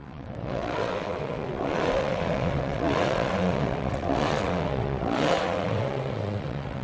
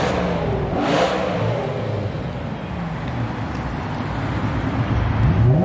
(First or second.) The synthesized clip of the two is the first